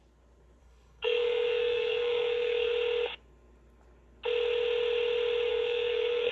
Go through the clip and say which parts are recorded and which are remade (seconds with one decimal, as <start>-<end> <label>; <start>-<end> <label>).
0.0-0.6 recorded; 0.6-2.7 remade; 2.7-5.5 recorded; 5.5-6.3 remade